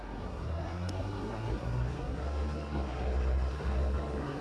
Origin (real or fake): fake